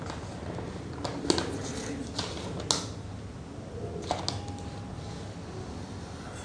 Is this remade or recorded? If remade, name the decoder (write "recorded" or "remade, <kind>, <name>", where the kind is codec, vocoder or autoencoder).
recorded